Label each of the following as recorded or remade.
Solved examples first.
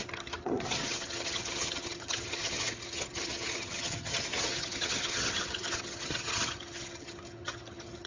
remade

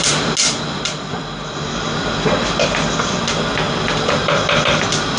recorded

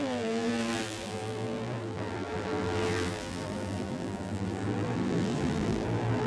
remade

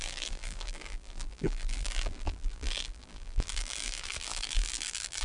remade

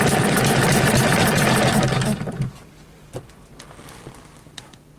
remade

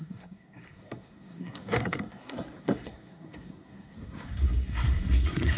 remade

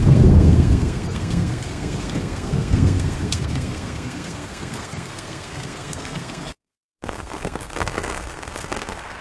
remade